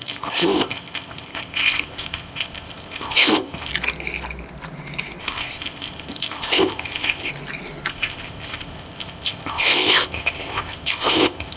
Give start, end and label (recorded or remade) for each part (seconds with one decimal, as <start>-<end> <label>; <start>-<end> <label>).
0.0-3.7 remade; 3.7-5.2 recorded; 5.2-7.3 remade; 7.3-7.9 recorded; 7.9-11.6 remade